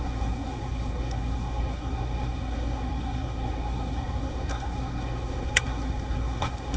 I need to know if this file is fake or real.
fake